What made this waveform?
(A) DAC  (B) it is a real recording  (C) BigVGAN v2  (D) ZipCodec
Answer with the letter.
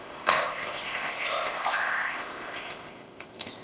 D